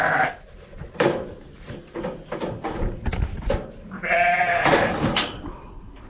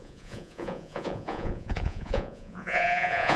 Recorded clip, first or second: first